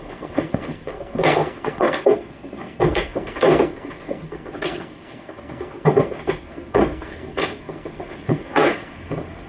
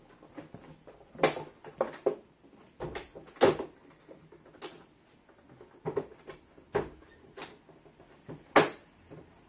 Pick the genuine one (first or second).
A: second